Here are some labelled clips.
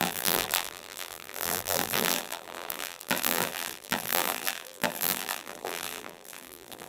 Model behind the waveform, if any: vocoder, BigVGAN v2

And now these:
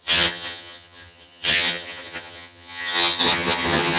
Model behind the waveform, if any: vocoder, HiFi-GAN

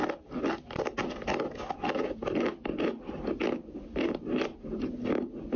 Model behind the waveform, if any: none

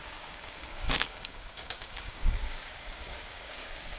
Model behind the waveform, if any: codec, DAC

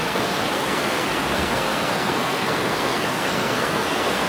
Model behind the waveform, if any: codec, SNAC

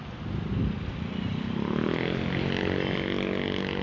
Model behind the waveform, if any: none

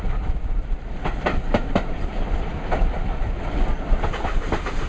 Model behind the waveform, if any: none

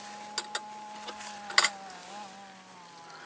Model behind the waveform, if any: none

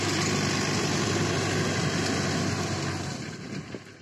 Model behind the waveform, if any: none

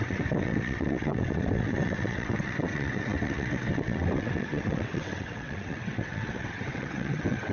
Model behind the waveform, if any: vocoder, WaveNeXt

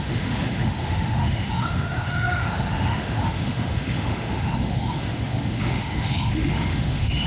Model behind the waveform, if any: autoencoder, DAC-VAE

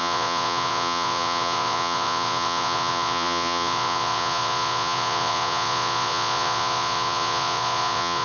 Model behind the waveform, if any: vocoder, Vocos